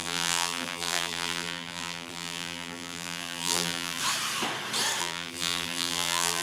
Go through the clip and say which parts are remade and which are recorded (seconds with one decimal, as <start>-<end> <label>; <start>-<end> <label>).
0.0-4.0 remade; 4.0-5.0 recorded; 5.0-6.4 remade